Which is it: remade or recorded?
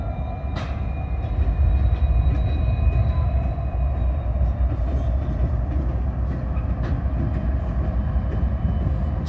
recorded